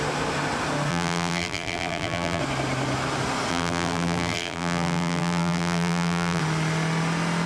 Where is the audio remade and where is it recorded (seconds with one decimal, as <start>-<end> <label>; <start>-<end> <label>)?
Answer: 0.0-0.9 recorded; 0.9-2.4 remade; 2.4-3.5 recorded; 3.5-6.4 remade; 6.4-7.5 recorded